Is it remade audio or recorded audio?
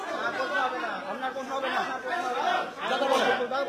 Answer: recorded